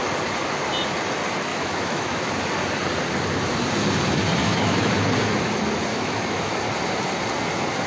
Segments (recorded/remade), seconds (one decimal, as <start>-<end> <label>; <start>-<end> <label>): 0.0-1.5 recorded; 1.5-2.3 remade; 2.3-4.4 recorded; 4.4-4.9 remade; 4.9-5.9 recorded; 5.9-6.6 remade; 6.6-7.9 recorded